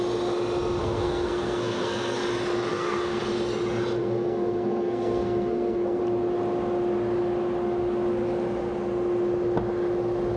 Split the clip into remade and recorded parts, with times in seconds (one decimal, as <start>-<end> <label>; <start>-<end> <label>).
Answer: 0.0-0.8 recorded; 0.8-2.2 remade; 2.2-2.7 recorded; 2.7-3.2 remade; 3.2-4.0 recorded; 4.0-6.0 remade; 6.0-10.4 recorded